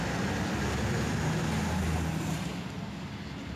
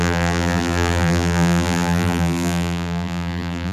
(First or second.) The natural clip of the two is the first